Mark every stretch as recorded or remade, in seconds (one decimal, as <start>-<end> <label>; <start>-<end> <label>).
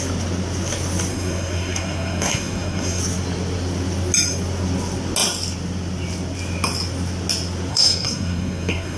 0.0-1.1 recorded; 1.1-3.0 remade; 3.0-7.7 recorded; 7.7-9.0 remade